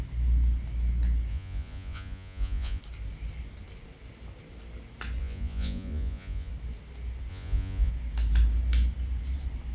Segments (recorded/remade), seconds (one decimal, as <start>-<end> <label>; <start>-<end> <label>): 0.0-1.3 recorded; 1.3-2.8 remade; 2.8-5.2 recorded; 5.2-6.5 remade; 6.5-7.3 recorded; 7.3-7.9 remade; 7.9-9.7 recorded